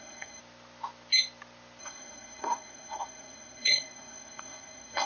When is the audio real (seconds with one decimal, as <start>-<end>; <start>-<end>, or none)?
0.4-1.8